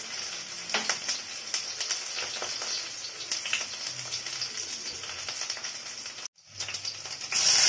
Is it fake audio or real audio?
real